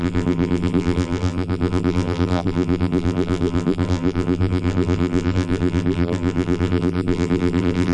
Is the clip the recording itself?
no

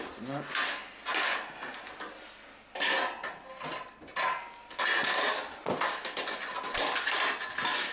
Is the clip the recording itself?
yes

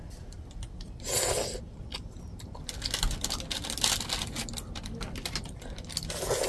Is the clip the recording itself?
yes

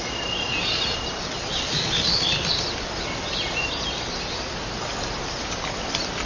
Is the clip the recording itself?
yes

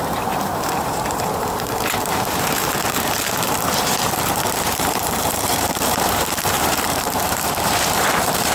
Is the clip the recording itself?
no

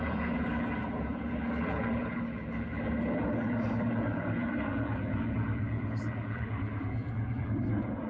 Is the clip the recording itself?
no